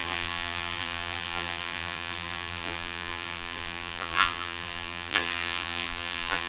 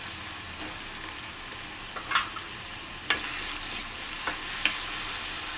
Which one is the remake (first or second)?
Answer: first